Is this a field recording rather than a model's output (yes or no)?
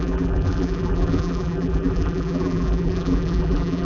no